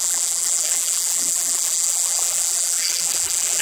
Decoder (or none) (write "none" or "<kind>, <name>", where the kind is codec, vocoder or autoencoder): vocoder, BigVGAN v2